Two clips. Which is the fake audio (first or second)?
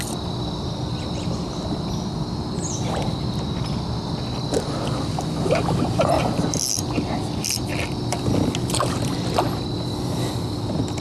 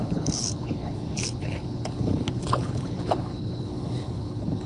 second